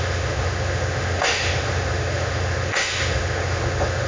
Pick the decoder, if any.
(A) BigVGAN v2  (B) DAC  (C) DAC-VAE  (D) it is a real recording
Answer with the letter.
C